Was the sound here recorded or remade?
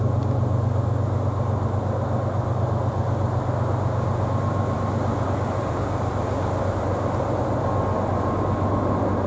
recorded